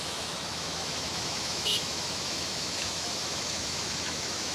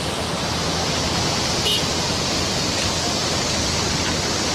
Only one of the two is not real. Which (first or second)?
first